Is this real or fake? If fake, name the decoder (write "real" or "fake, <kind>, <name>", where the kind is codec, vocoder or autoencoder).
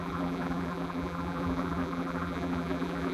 fake, vocoder, BigVGAN v2